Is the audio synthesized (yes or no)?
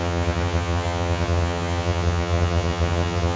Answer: yes